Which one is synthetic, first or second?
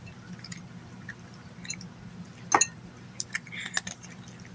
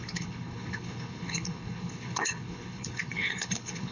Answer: second